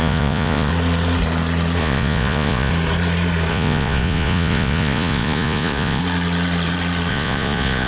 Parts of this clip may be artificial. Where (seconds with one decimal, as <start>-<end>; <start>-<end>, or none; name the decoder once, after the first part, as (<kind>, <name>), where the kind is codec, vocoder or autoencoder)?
0.0-0.7 (vocoder, Vocos); 1.8-2.7; 3.5-6.0; 7.1-7.9